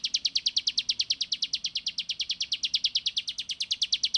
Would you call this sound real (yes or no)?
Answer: yes